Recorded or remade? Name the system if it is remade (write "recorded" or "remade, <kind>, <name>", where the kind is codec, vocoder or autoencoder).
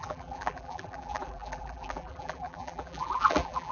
remade, vocoder, BigVGAN v2